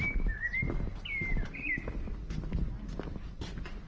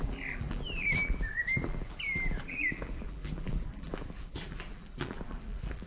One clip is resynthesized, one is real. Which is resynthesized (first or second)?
second